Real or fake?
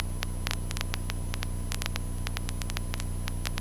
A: real